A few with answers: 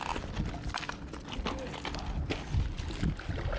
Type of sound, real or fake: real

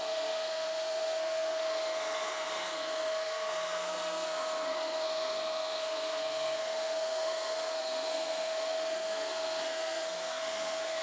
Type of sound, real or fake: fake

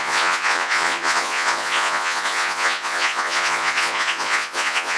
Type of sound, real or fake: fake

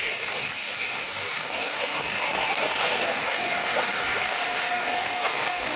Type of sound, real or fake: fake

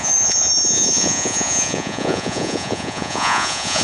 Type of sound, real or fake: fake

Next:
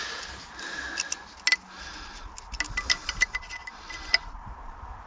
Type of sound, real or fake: real